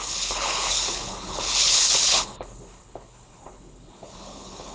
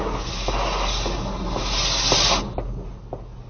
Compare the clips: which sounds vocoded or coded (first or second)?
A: first